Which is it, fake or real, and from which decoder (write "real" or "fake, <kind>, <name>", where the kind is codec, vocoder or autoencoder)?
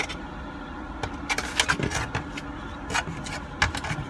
real